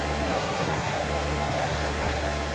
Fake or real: fake